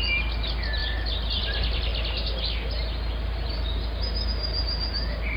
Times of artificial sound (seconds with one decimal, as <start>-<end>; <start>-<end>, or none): none